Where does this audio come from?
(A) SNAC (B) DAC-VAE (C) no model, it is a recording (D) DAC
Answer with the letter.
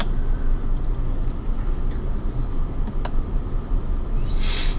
C